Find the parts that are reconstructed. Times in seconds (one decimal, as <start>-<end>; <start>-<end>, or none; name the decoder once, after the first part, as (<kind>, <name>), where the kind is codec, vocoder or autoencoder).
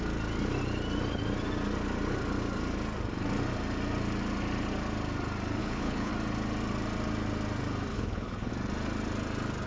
5.6-6.1 (codec, HILCodec); 7.9-8.5